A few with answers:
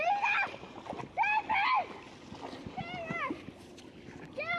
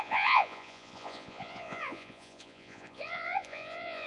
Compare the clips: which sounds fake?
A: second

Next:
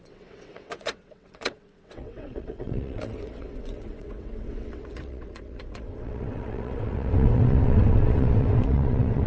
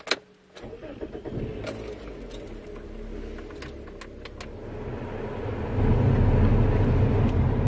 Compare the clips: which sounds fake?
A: first